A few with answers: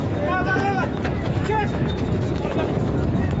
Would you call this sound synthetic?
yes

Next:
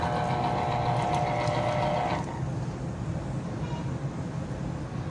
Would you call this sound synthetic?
no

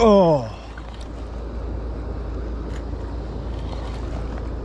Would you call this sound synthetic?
no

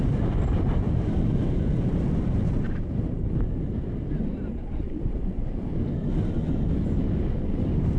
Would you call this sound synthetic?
no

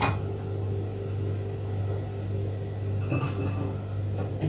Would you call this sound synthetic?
no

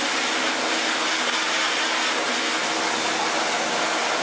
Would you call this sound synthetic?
no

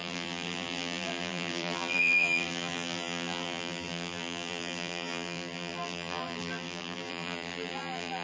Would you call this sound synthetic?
yes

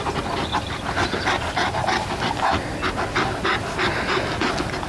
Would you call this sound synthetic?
no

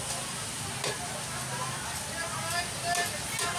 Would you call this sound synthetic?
no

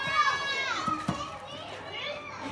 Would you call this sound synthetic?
no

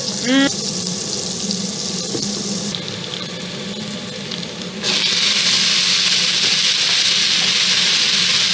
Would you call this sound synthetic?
no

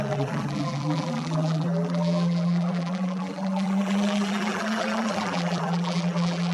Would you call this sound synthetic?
yes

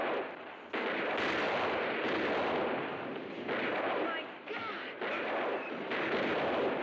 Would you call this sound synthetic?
no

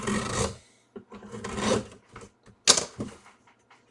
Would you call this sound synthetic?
no